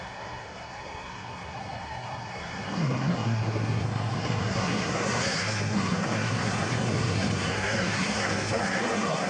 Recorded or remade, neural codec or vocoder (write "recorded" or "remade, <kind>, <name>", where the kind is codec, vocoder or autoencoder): remade, codec, SNAC